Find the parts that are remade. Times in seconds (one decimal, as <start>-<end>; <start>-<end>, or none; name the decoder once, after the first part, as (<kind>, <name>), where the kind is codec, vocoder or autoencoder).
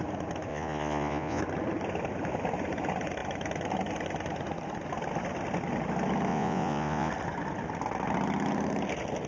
0.5-1.4 (vocoder, Vocos); 6.3-7.1